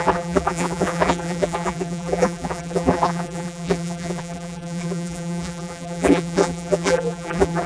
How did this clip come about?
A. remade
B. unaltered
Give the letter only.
A